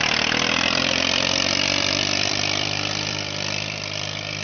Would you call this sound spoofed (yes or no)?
yes